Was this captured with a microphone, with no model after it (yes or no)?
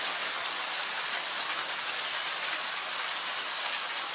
yes